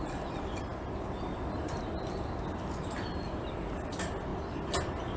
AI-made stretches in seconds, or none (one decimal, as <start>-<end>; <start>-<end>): none